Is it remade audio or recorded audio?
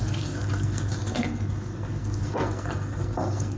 remade